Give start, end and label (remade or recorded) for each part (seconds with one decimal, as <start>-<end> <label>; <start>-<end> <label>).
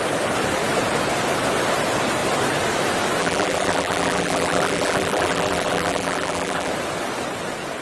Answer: 0.0-3.2 recorded; 3.2-6.7 remade; 6.7-7.8 recorded